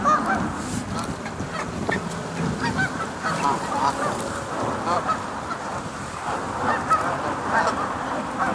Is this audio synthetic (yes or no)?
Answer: no